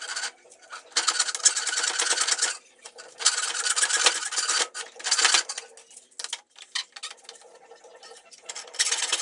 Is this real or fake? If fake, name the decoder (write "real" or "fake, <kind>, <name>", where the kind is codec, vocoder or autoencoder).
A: real